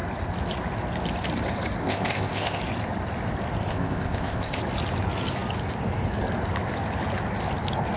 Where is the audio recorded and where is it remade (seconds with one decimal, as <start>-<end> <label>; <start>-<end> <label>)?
0.0-1.8 recorded; 1.8-2.6 remade; 2.6-3.7 recorded; 3.7-4.6 remade; 4.6-8.0 recorded